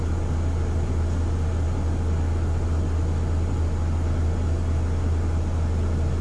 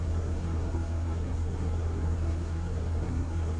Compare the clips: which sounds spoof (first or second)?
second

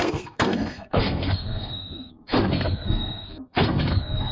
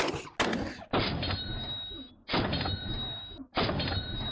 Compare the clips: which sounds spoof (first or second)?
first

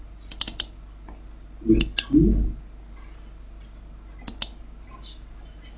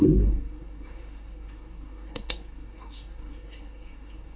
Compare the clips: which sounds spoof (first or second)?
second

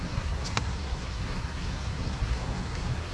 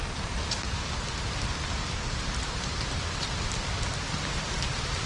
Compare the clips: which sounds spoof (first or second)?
first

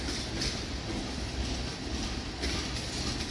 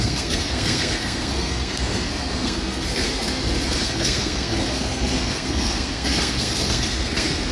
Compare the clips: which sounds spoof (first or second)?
second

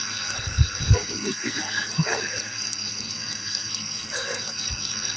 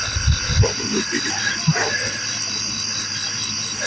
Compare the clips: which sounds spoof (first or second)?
first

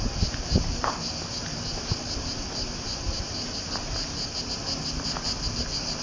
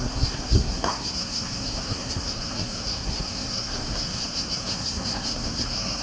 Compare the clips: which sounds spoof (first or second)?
second